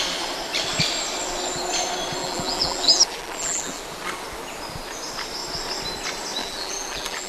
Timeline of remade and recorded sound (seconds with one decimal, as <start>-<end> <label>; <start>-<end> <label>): 0.0-2.2 recorded; 2.2-3.8 remade; 3.8-6.4 recorded; 6.4-7.3 remade